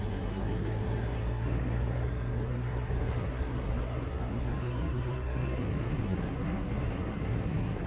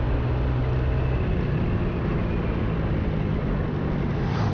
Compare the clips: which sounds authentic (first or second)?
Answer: second